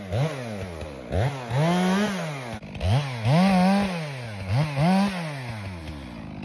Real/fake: real